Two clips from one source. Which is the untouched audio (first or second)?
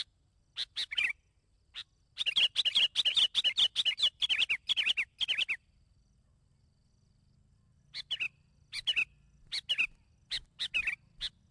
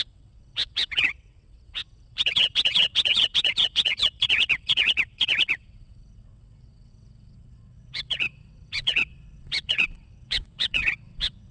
first